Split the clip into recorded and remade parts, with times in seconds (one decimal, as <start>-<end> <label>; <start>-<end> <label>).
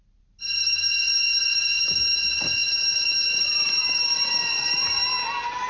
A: 0.0-5.7 recorded